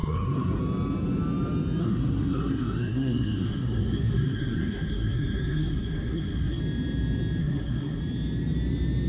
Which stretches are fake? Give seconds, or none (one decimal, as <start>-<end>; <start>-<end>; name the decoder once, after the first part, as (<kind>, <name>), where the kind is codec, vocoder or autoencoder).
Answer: 0.0-0.6 (codec, SNAC); 1.8-6.6; 7.4-8.0